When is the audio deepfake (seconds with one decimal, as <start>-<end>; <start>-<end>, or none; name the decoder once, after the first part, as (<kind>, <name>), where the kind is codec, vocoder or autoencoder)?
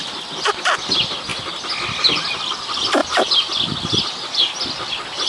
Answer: none